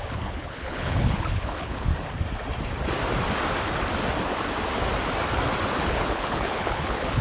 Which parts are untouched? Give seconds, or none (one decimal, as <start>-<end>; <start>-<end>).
1.9-5.8